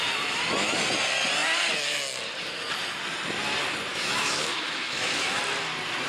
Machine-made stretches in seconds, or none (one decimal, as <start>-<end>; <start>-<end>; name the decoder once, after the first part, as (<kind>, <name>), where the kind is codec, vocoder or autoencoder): 3.9-5.4 (autoencoder, DAC-VAE)